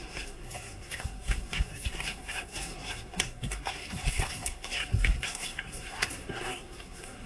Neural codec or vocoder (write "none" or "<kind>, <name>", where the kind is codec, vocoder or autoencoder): codec, SNAC